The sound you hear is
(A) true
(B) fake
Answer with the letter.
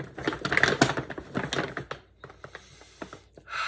A